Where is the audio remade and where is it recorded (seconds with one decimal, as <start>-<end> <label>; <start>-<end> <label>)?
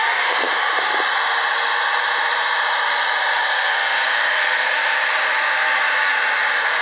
0.0-0.9 remade; 0.9-3.3 recorded; 3.3-6.1 remade; 6.1-6.8 recorded